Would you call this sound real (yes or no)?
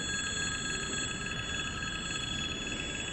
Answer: yes